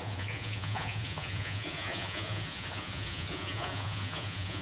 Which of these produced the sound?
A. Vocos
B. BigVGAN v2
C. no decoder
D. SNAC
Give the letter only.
A